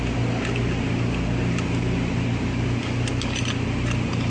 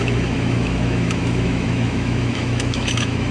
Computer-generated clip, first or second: second